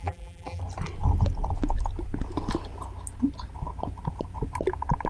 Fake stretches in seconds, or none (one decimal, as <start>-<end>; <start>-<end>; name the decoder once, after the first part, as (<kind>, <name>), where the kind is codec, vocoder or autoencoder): 0.0-0.6 (vocoder, BigVGAN v2)